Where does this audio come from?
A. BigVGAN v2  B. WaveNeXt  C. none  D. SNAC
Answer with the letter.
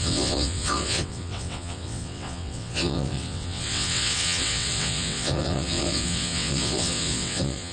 B